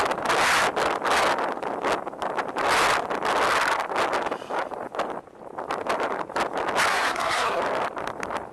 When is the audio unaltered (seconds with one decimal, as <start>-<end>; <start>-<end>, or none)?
0.0-6.9; 7.6-8.5